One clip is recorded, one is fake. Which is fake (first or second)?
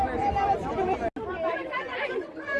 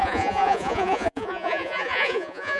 second